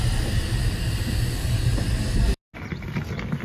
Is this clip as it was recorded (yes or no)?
yes